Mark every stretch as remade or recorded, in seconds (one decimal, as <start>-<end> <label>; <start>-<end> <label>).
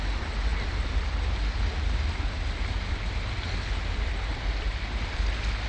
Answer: 0.0-5.7 recorded